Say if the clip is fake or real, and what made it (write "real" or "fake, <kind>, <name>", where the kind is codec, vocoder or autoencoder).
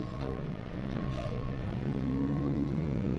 fake, vocoder, WaveNeXt